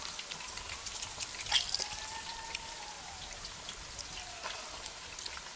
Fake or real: real